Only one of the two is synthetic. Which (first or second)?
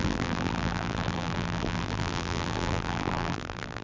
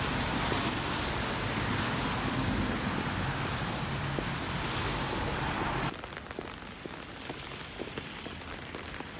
first